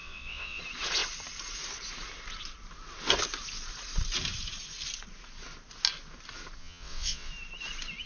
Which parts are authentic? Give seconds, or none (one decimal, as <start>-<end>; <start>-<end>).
0.6-6.6; 7.3-8.1